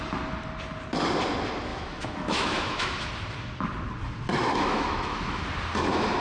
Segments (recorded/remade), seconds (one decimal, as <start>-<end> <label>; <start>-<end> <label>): 0.0-1.7 recorded; 1.7-3.1 remade; 3.1-4.5 recorded; 4.5-5.4 remade; 5.4-6.2 recorded